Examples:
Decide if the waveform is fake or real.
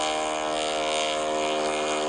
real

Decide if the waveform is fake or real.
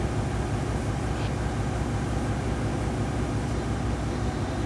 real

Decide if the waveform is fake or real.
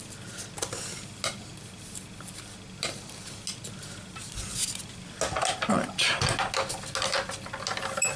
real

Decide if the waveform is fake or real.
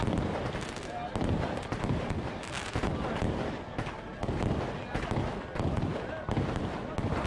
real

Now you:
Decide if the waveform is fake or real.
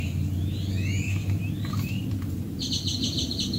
real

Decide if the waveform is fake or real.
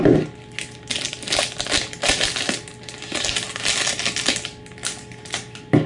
real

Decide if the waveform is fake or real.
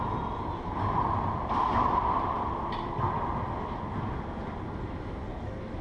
real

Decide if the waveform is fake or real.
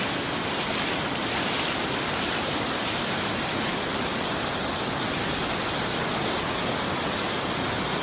real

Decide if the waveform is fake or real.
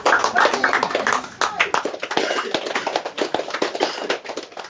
real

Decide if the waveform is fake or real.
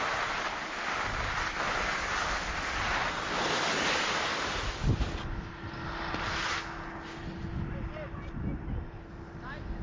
real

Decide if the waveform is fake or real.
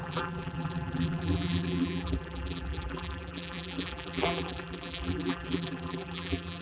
fake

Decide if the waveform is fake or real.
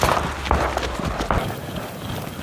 real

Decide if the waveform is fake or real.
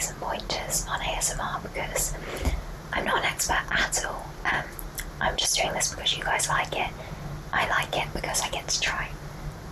real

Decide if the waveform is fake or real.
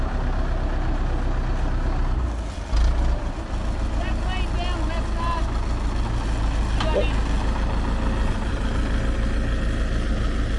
real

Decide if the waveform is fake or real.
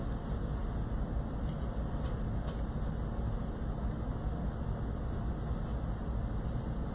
real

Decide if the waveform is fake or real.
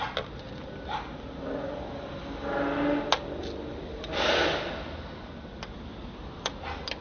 real